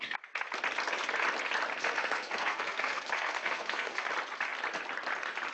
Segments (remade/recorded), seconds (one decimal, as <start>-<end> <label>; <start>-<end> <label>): 0.0-1.7 recorded; 1.7-4.1 remade; 4.1-5.5 recorded